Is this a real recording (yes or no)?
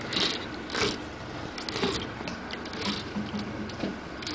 yes